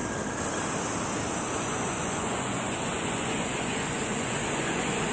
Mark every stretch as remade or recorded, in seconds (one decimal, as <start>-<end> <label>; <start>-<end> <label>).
0.0-1.6 recorded; 1.6-5.1 remade